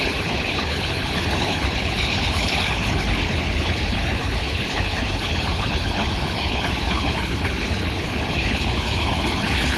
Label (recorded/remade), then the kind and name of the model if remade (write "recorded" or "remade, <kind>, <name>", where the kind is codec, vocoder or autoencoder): remade, codec, HILCodec